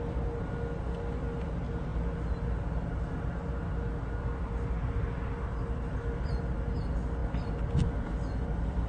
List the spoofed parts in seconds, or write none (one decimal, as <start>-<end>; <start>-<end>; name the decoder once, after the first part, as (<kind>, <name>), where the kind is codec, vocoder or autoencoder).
none